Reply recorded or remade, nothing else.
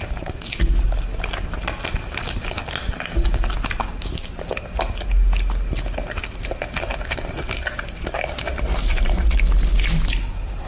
recorded